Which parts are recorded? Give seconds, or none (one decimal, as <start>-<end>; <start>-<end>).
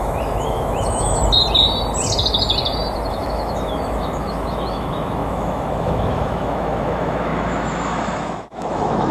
1.2-3.1